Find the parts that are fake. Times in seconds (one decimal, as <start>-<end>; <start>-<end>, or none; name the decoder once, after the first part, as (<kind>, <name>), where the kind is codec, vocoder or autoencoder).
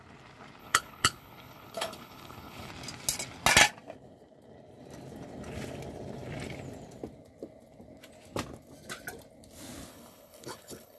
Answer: 0.6-2.7 (codec, HILCodec); 9.9-11.0